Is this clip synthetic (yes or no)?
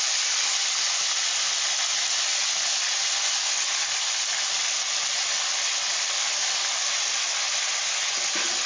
no